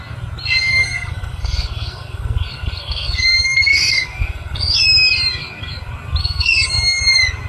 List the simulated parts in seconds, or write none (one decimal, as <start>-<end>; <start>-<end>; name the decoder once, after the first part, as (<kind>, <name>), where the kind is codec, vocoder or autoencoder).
0.7-4.8 (codec, SNAC); 6.2-7.0